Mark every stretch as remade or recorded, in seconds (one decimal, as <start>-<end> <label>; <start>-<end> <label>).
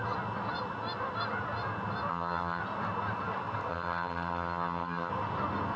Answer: 0.0-2.1 recorded; 2.1-2.6 remade; 2.6-3.7 recorded; 3.7-5.1 remade; 5.1-5.8 recorded